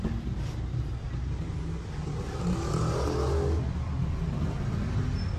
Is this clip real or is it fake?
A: real